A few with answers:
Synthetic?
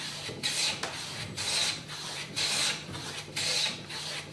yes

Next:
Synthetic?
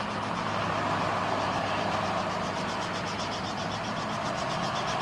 no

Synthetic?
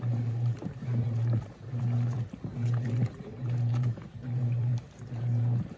yes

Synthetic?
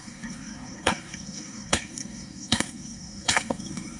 yes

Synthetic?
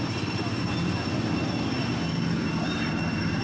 no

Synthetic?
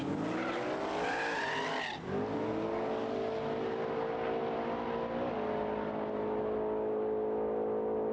no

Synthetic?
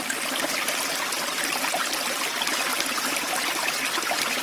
no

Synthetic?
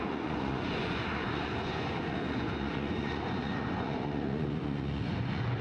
yes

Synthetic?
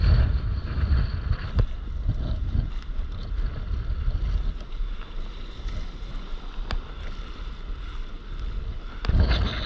no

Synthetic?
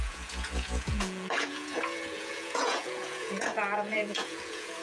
yes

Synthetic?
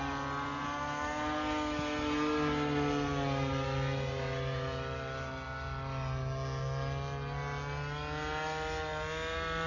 no